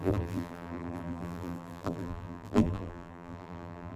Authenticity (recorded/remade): remade